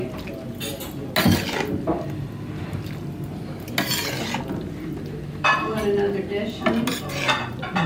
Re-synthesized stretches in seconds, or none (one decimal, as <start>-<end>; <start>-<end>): none

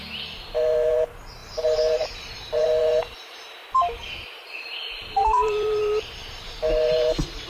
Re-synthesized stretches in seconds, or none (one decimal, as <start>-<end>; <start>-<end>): 0.0-3.6; 4.5-7.5